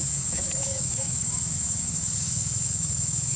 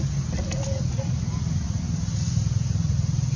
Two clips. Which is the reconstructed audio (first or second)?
first